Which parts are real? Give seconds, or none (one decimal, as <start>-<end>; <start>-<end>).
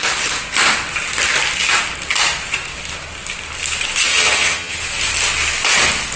0.0-4.1; 4.8-6.2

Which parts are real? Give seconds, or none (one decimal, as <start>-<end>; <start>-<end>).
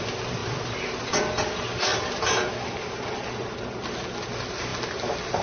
0.0-5.4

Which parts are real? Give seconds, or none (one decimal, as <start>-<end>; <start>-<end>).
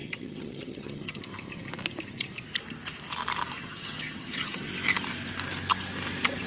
1.2-3.6; 4.7-6.5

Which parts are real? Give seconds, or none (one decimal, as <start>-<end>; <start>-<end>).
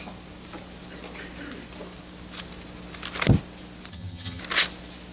0.0-3.9; 4.4-5.1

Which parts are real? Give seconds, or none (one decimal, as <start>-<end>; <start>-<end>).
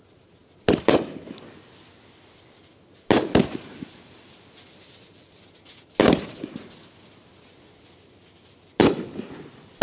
0.0-9.8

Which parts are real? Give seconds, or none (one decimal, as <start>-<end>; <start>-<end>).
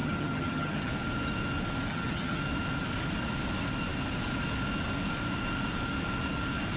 0.9-1.9; 2.4-6.8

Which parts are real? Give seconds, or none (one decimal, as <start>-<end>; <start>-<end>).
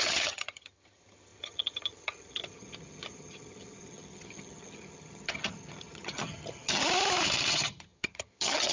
6.8-7.5